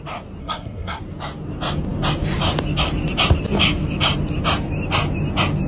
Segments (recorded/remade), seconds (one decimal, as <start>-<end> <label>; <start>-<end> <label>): 0.0-0.4 recorded; 0.4-1.0 remade; 1.0-5.7 recorded